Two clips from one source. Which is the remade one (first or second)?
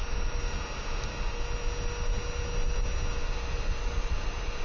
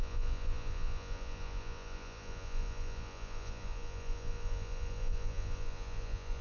second